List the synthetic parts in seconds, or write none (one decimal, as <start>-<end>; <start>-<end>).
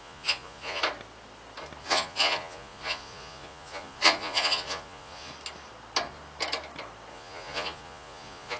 0.0-0.8; 1.8-5.3; 7.1-8.6